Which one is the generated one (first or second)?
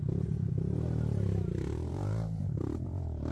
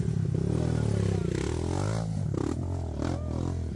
first